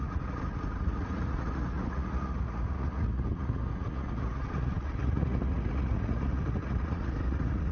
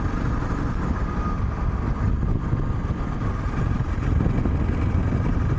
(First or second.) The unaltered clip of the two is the second